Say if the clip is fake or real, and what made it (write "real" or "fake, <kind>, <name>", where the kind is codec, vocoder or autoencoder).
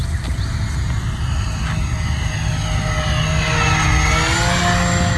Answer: real